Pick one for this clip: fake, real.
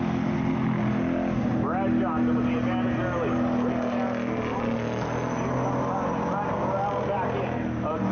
real